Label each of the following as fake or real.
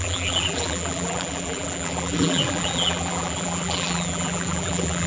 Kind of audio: fake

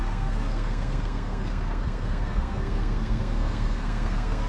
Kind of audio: fake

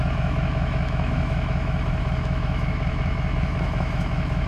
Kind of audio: fake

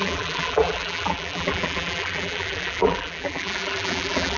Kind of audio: fake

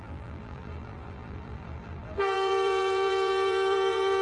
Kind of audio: fake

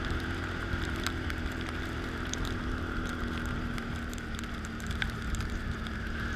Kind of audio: fake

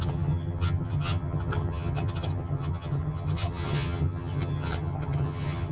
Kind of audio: fake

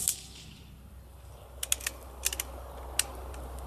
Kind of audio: real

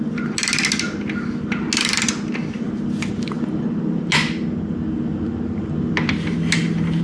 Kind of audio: real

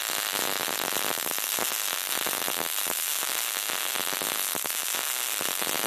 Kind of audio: real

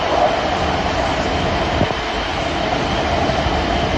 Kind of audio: real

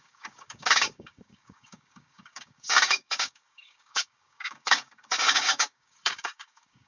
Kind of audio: fake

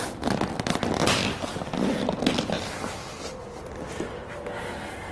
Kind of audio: real